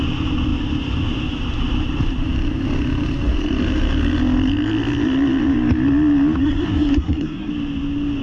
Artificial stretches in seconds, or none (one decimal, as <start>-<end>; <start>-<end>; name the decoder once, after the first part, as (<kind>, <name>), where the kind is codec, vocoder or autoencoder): 6.4-7.5 (codec, SNAC)